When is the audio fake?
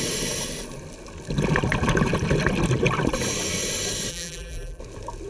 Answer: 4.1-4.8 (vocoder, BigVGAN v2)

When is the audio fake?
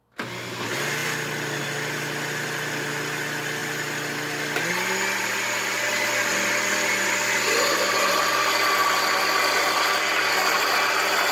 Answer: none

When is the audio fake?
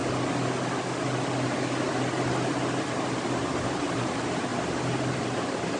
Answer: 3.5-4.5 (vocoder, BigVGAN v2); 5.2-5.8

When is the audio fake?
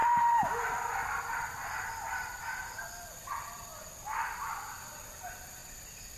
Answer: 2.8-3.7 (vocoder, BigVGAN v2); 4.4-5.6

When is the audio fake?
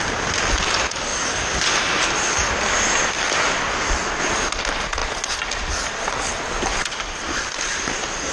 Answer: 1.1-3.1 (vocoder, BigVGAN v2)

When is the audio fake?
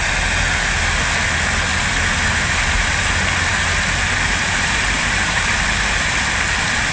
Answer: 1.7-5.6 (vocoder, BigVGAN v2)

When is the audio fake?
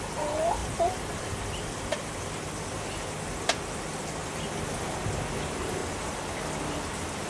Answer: 5.8-6.4 (vocoder, BigVGAN v2)